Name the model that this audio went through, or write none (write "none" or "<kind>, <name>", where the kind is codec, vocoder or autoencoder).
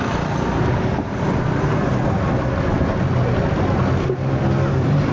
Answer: none